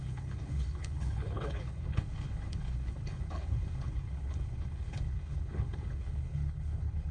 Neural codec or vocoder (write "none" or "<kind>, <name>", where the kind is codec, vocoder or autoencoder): codec, HILCodec